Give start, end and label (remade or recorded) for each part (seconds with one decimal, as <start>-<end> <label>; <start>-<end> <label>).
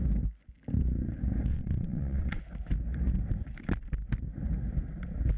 0.0-1.5 recorded; 1.5-2.4 remade; 2.4-5.4 recorded